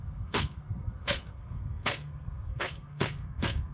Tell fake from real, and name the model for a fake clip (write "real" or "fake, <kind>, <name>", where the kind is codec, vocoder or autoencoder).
fake, codec, SNAC